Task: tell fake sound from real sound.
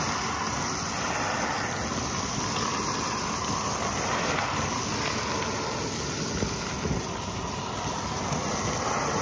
real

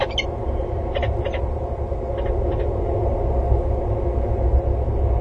real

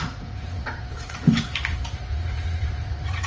fake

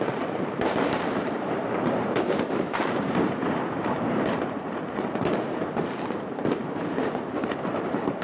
fake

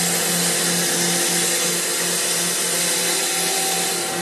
real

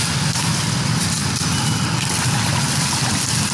real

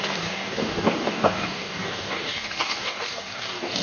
fake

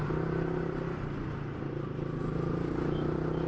real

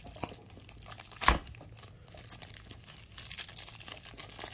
real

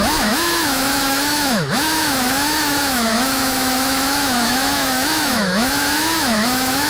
fake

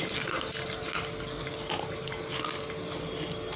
real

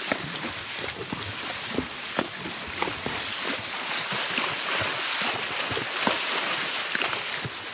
real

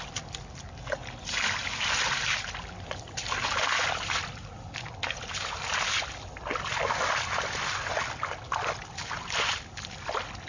real